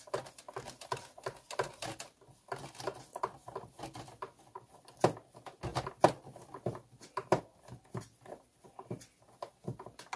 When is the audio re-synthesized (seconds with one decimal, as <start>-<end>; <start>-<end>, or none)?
none